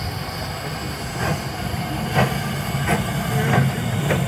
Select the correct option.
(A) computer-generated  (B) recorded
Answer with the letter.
B